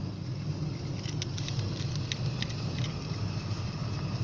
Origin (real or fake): real